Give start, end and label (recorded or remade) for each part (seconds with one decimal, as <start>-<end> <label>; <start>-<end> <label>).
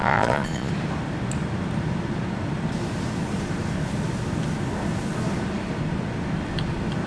0.0-0.7 remade; 0.7-7.1 recorded